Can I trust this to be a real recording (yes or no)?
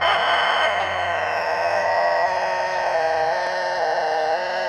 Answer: yes